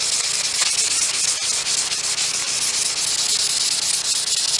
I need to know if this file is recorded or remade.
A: recorded